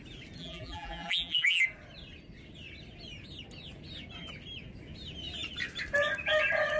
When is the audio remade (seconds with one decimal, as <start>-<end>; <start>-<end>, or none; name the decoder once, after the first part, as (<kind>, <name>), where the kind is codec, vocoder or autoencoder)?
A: 0.4-1.6 (vocoder, BigVGAN v2)